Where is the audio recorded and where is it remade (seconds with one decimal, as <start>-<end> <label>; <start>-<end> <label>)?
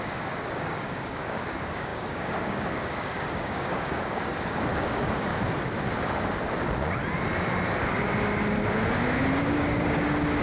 0.0-5.3 remade; 5.3-9.4 recorded; 9.4-10.4 remade